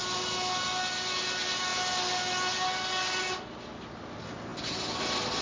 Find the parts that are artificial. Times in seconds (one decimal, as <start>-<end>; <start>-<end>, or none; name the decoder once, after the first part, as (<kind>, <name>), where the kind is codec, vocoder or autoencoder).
none